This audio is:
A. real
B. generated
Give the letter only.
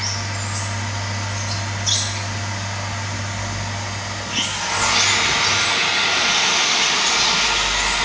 A